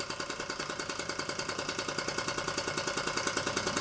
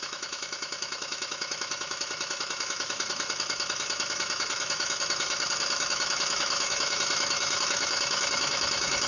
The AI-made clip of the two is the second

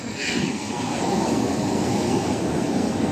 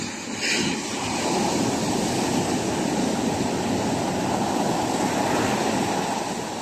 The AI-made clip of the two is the first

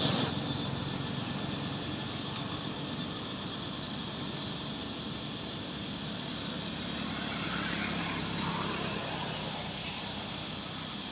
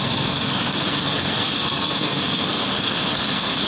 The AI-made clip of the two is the second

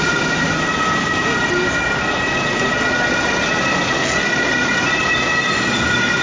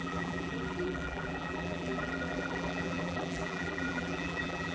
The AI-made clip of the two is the second